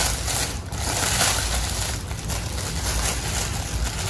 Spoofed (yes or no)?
no